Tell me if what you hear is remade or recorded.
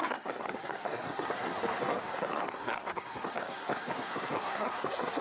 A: remade